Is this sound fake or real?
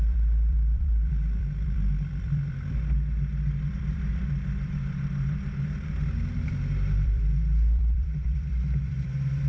fake